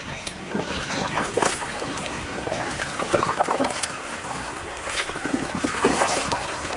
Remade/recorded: remade